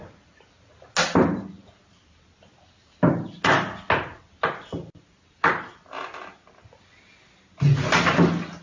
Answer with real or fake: real